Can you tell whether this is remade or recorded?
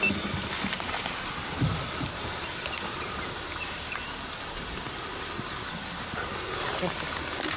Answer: recorded